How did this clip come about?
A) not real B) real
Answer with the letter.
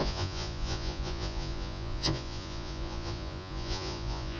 A